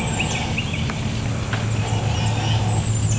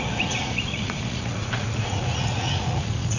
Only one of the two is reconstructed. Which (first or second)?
second